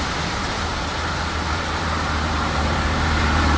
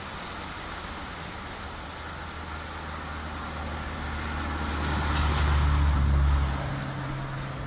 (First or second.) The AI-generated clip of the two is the first